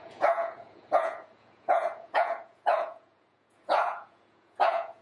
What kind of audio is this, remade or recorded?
remade